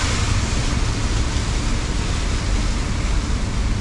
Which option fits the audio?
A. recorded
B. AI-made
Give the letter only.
A